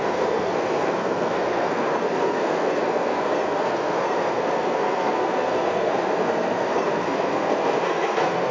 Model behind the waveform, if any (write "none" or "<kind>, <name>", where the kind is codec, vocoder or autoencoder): codec, SNAC